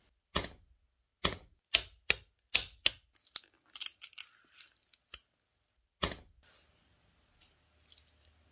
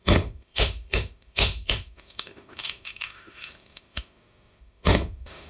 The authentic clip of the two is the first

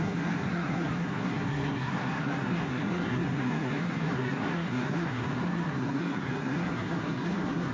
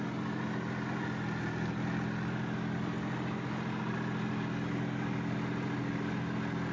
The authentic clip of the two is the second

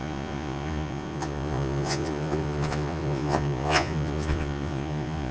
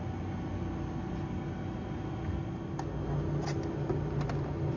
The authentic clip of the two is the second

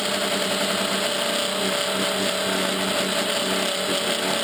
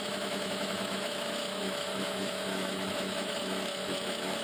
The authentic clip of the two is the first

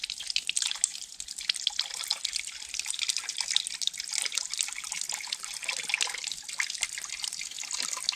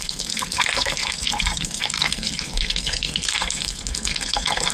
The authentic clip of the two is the first